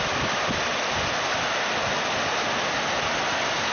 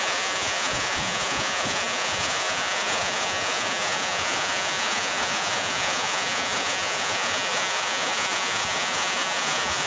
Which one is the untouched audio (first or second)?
first